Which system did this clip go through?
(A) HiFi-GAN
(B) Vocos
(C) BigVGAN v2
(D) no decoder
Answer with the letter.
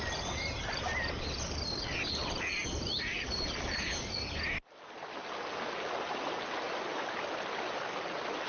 D